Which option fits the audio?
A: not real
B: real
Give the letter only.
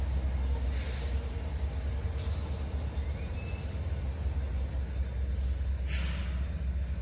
B